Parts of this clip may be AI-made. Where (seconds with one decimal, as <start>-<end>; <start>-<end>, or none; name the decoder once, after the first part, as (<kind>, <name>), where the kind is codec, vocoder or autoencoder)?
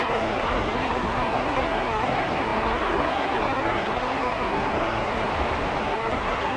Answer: 0.0-5.3 (codec, SNAC); 5.8-6.6